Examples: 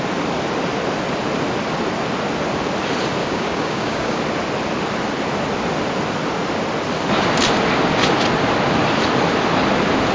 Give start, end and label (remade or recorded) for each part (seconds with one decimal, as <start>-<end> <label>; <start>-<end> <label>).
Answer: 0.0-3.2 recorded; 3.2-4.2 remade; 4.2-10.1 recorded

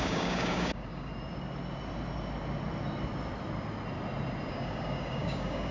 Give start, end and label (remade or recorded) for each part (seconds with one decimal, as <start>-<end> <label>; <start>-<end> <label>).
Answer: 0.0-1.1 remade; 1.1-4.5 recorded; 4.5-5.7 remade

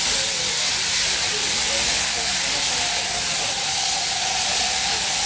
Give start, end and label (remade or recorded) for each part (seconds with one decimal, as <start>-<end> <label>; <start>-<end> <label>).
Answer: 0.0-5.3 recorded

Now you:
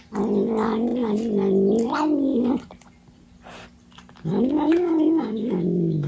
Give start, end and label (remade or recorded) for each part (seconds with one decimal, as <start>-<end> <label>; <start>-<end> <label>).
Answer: 0.0-4.3 recorded; 4.3-6.1 remade

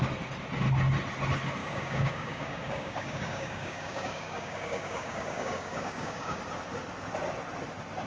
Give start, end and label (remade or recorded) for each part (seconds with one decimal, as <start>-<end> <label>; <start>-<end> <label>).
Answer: 0.0-1.6 recorded; 1.6-6.4 remade; 6.4-8.1 recorded